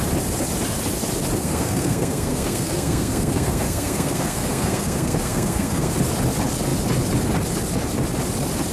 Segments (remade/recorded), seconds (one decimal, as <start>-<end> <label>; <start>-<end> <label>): 0.0-1.4 recorded; 1.4-5.9 remade; 5.9-8.7 recorded